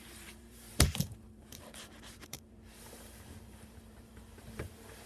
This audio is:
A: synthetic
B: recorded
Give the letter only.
A